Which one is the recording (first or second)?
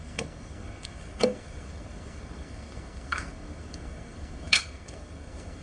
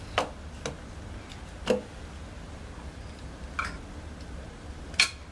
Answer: second